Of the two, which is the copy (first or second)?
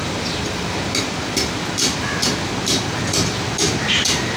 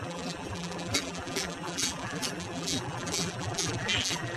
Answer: second